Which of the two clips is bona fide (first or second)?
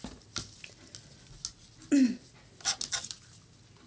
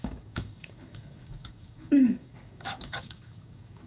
first